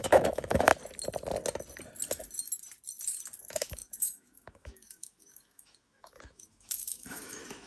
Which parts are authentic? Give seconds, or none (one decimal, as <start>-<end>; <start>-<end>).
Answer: 0.7-3.4